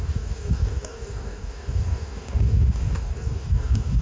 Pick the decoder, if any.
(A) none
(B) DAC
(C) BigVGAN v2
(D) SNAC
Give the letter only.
B